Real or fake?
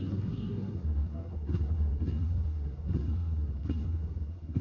fake